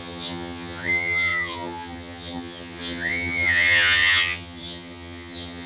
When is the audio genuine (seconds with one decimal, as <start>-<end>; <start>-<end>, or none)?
none